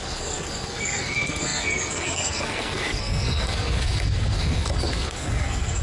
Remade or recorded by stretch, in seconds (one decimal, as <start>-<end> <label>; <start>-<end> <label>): 0.0-5.8 remade

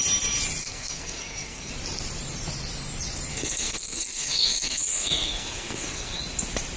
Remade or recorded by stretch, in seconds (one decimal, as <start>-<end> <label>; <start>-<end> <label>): 0.0-0.6 recorded; 0.6-1.7 remade; 1.7-3.3 recorded; 3.3-6.2 remade; 6.2-6.8 recorded